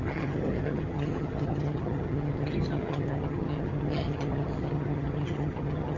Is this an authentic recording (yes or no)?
no